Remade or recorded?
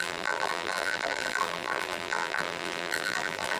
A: remade